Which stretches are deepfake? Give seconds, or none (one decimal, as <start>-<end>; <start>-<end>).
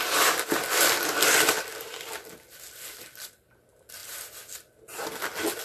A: none